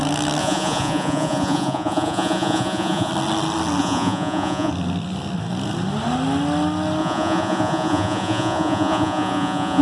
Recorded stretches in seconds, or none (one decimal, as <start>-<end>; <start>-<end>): 0.0-0.4; 3.1-3.8; 4.7-7.0